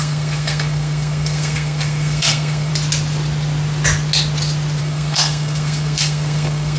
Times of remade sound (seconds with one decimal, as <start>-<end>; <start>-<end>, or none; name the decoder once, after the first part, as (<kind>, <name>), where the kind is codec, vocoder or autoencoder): 0.0-2.7 (codec, SNAC); 4.8-6.8